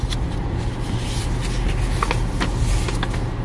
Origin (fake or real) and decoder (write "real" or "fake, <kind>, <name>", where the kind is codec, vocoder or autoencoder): real